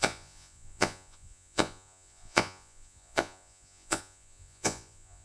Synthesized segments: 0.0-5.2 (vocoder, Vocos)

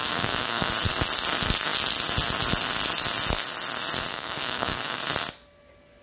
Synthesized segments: 0.0-0.7 (codec, DAC); 4.1-5.0